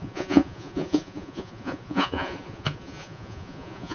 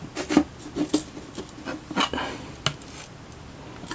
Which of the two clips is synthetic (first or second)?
first